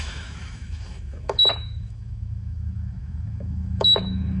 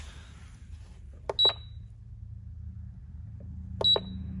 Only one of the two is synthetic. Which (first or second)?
first